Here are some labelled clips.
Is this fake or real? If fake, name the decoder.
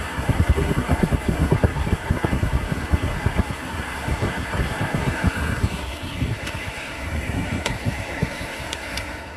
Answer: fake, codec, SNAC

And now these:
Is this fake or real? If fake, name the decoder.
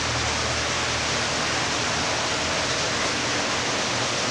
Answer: real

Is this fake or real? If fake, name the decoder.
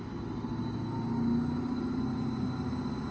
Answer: real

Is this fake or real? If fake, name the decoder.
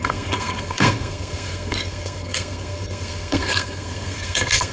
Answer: fake, codec, SNAC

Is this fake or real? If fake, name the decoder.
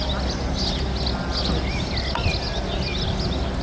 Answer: real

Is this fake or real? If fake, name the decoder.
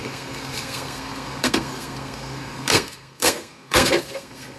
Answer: fake, codec, SNAC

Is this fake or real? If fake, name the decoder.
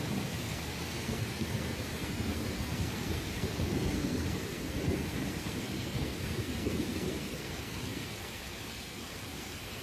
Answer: fake, codec, SNAC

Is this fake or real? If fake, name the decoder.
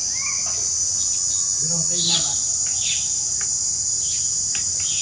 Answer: real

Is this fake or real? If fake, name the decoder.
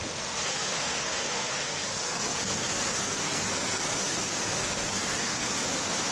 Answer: fake, codec, SNAC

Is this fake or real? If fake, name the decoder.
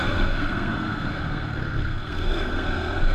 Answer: fake, codec, SNAC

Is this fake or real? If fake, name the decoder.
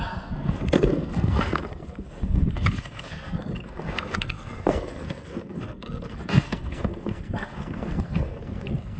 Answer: fake, codec, SNAC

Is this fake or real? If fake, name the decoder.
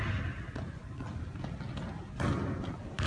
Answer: real